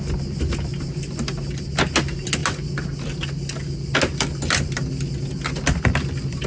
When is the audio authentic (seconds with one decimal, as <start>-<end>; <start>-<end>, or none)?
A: 0.0-6.5